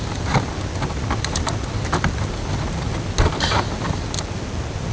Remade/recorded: recorded